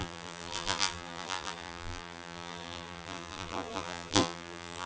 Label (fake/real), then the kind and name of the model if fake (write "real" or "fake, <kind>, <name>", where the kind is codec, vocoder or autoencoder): fake, vocoder, BigVGAN v2